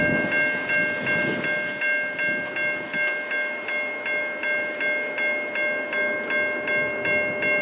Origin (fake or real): real